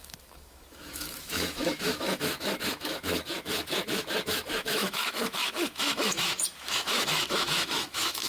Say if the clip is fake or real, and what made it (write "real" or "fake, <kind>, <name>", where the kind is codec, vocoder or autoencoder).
fake, autoencoder, DAC-VAE